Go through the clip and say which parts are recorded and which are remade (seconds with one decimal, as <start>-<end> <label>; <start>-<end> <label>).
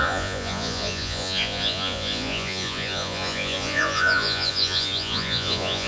0.0-5.9 remade